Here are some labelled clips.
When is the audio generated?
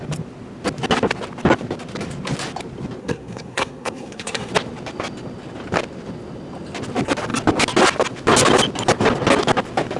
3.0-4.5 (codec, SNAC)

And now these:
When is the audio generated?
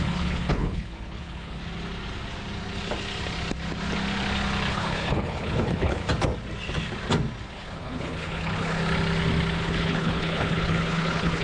0.0-1.6 (codec, HILCodec); 4.7-6.0; 7.5-8.8; 9.5-11.4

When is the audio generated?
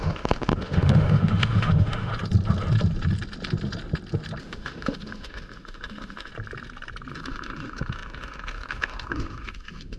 0.0-2.1 (autoencoder, DAC-VAE); 4.4-6.3; 7.1-10.0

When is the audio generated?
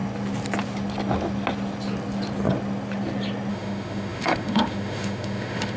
3.5-5.8 (autoencoder, DAC-VAE)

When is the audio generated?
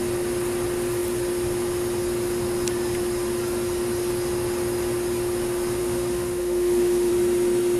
5.8-7.1 (autoencoder, DAC-VAE)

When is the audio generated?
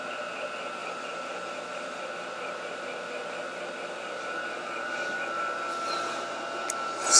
0.8-2.0 (vocoder, BigVGAN v2)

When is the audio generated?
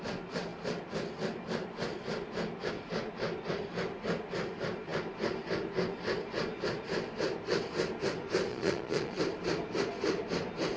8.5-9.2 (vocoder, Vocos)